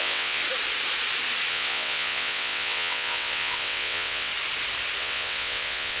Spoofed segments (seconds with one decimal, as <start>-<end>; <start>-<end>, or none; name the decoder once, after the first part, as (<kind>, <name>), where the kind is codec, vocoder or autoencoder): 0.0-0.4 (vocoder, WaveNeXt); 1.5-4.3; 5.0-6.0